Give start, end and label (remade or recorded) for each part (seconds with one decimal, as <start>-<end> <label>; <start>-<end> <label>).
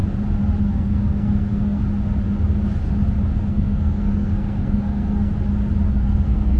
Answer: 0.0-0.6 recorded; 0.6-1.8 remade; 1.8-3.5 recorded; 3.5-5.3 remade; 5.3-5.9 recorded; 5.9-6.6 remade